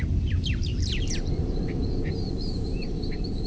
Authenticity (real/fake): fake